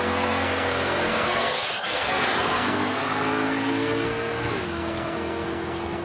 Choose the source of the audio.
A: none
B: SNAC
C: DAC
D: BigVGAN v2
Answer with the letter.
B